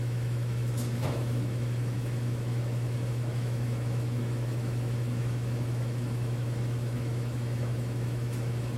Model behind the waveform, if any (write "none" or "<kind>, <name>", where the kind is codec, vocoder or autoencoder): autoencoder, DAC-VAE